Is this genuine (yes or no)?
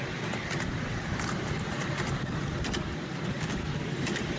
yes